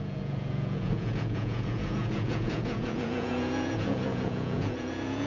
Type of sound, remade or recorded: remade